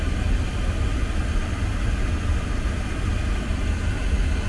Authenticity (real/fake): real